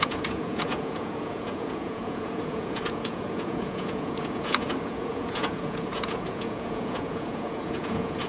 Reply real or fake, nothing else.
fake